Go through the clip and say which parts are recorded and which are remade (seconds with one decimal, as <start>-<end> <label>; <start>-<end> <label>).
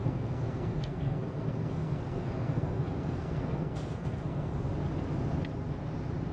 0.0-4.7 remade; 4.7-6.3 recorded